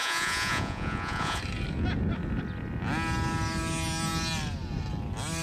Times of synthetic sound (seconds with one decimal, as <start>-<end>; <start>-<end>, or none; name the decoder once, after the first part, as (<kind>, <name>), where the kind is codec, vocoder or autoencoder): 0.0-1.4 (vocoder, Vocos)